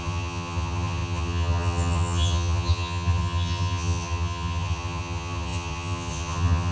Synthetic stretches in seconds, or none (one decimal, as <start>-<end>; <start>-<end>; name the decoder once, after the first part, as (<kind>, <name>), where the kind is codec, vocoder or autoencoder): 0.0-6.7 (vocoder, HiFi-GAN)